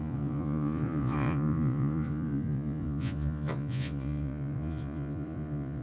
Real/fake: fake